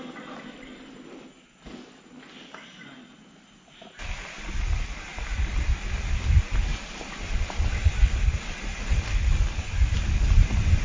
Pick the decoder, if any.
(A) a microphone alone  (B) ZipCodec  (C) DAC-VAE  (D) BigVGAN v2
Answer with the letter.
A